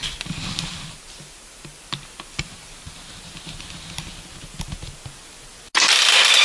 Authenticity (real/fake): real